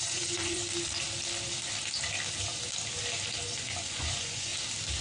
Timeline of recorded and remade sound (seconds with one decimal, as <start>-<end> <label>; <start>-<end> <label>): 0.0-0.6 remade; 0.6-3.6 recorded; 3.6-4.5 remade; 4.5-5.0 recorded